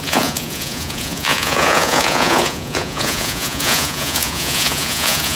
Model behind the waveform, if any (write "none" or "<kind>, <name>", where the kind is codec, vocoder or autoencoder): vocoder, Vocos